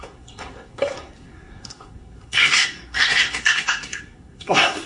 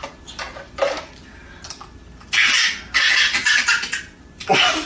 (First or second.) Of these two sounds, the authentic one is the second